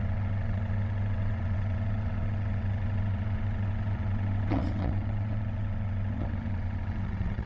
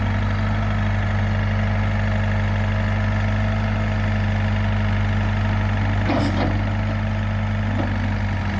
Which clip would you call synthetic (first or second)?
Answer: first